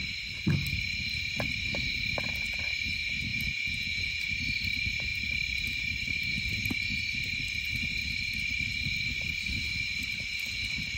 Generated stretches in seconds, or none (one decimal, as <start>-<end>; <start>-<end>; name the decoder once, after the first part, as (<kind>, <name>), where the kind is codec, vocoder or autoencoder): 3.3-4.2 (vocoder, Vocos)

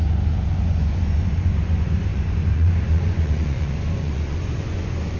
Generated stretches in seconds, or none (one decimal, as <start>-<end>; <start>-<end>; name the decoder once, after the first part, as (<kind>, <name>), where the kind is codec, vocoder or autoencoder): 0.0-5.2 (vocoder, Vocos)

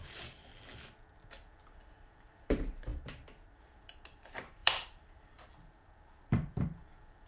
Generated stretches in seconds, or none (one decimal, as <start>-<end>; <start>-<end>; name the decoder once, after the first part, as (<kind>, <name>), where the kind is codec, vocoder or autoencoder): 0.0-0.5 (vocoder, BigVGAN v2); 1.1-7.3

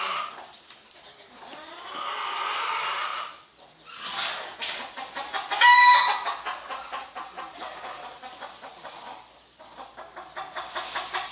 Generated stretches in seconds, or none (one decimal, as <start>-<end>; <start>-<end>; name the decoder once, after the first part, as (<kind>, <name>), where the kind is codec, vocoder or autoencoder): none

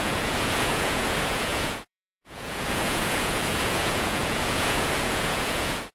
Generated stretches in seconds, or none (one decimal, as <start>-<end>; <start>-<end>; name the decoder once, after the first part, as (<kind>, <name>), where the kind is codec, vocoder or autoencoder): 0.0-5.9 (vocoder, Vocos)

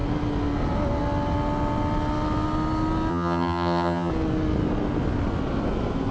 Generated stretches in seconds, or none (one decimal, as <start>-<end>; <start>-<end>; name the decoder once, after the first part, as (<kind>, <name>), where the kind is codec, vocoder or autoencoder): 3.1-4.1 (vocoder, HiFi-GAN)